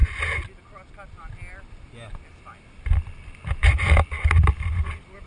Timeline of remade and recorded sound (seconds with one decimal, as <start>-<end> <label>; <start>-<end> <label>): 0.0-5.3 recorded

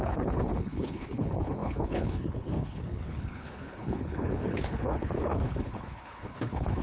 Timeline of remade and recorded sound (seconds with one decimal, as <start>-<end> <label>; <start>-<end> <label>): 0.0-6.8 remade

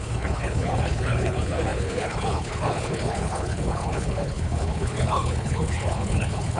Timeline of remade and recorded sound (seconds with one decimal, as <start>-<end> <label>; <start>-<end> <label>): 0.0-6.6 remade

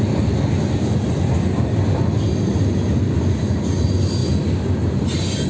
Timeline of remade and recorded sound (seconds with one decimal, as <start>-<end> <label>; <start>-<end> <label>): 0.0-5.5 recorded

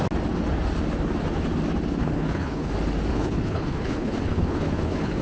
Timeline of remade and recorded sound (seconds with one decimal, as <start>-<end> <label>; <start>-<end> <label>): 0.0-2.0 recorded; 2.0-2.7 remade; 2.7-3.1 recorded; 3.1-5.2 remade

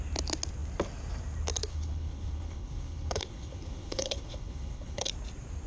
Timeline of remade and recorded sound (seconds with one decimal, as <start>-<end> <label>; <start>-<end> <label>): 0.0-1.7 recorded; 1.7-5.1 remade; 5.1-5.7 recorded

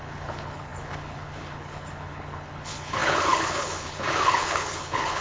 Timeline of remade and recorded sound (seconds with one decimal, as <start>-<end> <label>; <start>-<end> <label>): 0.0-5.2 remade

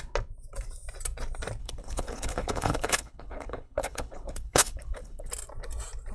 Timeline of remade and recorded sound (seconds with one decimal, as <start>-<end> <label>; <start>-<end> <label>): 0.0-1.6 recorded; 1.6-5.3 remade; 5.3-6.1 recorded